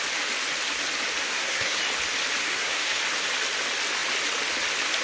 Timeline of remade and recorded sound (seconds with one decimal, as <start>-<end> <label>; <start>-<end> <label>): 0.0-1.2 recorded; 1.2-1.8 remade; 1.8-2.4 recorded; 2.4-3.0 remade; 3.0-5.0 recorded